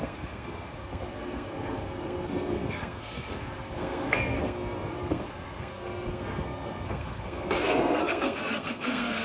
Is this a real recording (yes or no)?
no